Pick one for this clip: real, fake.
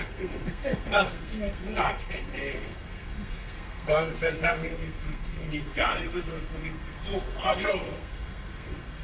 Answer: fake